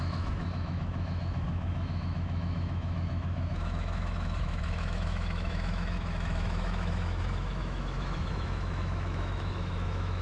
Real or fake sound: fake